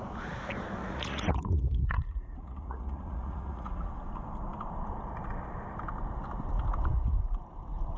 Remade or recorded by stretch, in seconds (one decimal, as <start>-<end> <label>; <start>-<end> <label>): 0.0-0.8 recorded; 0.8-3.9 remade; 3.9-8.0 recorded